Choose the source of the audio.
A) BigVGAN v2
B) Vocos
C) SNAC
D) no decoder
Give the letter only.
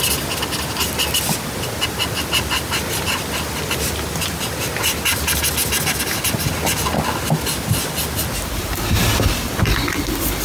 D